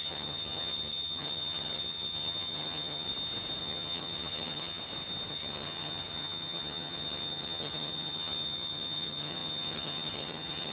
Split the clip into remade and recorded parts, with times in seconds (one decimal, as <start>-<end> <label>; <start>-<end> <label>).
0.0-3.1 remade; 3.1-3.6 recorded; 3.6-4.8 remade; 4.8-5.3 recorded; 5.3-10.7 remade